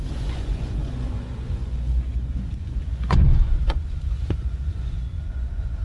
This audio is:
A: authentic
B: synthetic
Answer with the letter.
B